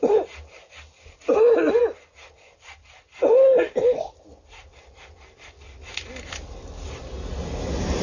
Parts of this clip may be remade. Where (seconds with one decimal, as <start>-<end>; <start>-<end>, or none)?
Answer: none